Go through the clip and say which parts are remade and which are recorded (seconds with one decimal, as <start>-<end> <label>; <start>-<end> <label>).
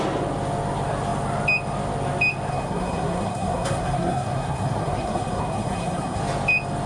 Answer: 0.0-2.5 recorded; 2.5-6.2 remade; 6.2-6.9 recorded